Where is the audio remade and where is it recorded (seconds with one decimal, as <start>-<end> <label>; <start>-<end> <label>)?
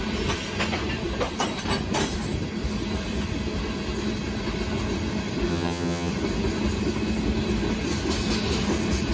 0.0-5.5 recorded; 5.5-6.1 remade; 6.1-9.1 recorded